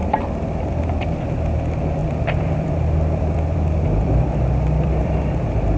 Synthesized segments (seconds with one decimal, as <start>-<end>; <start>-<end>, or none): 0.0-1.2; 2.0-5.8